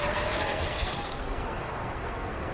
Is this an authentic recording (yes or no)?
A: no